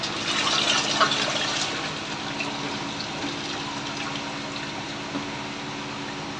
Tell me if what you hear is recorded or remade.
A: recorded